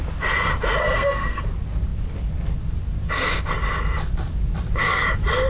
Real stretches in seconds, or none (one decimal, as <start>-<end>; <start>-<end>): 0.0-0.8; 1.4-5.5